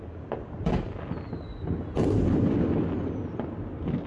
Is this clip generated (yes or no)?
no